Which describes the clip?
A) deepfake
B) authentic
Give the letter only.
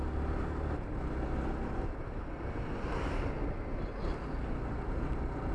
B